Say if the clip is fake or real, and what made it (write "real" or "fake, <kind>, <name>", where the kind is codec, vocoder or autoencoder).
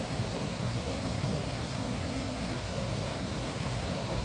fake, codec, SNAC